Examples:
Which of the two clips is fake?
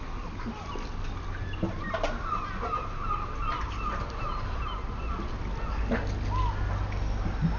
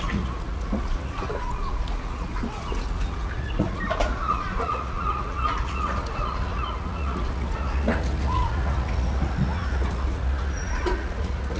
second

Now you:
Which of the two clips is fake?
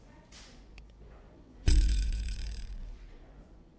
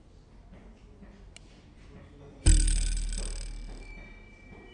first